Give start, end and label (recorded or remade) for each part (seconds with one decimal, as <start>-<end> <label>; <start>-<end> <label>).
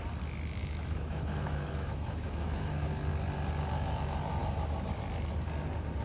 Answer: 0.0-0.6 recorded; 0.6-2.9 remade; 2.9-6.0 recorded